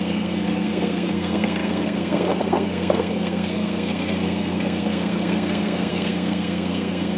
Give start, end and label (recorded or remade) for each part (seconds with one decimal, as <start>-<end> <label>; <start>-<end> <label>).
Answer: 0.0-7.2 remade